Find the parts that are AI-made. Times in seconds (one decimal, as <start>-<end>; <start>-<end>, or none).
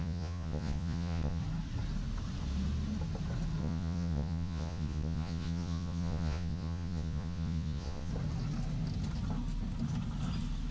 0.0-1.4; 3.6-8.1